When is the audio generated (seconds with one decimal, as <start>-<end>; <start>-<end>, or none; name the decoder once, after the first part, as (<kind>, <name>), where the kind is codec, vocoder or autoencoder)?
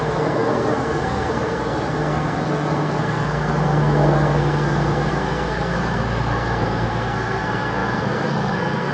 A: 0.0-8.9 (codec, SNAC)